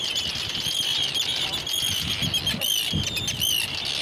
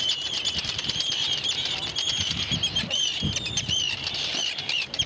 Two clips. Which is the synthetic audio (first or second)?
second